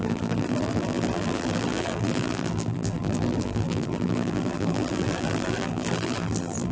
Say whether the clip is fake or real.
fake